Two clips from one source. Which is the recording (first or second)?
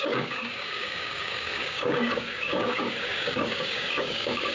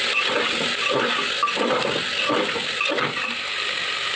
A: second